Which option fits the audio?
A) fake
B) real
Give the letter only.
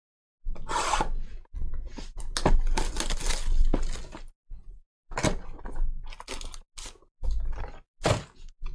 B